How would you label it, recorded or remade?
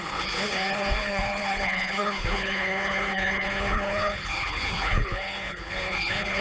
remade